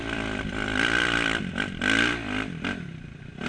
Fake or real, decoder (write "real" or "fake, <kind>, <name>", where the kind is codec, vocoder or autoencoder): fake, vocoder, BigVGAN v2